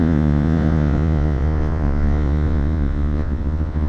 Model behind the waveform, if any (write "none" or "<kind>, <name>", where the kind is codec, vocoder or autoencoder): vocoder, Vocos